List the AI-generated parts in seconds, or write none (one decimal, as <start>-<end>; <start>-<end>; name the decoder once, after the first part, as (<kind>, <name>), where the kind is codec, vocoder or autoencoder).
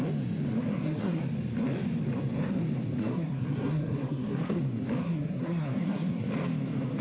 0.7-1.2 (codec, SNAC); 3.0-4.6; 5.0-6.3